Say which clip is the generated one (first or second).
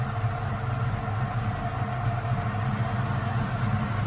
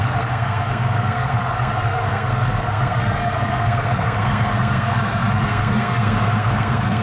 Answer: second